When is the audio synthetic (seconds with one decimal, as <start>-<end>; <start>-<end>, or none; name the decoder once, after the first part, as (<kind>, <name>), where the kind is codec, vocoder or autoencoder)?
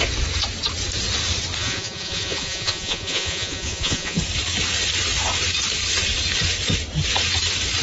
1.6-4.2 (vocoder, Vocos)